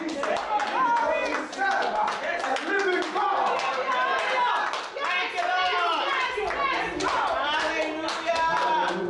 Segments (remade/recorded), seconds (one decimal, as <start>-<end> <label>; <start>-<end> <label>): 0.0-9.1 recorded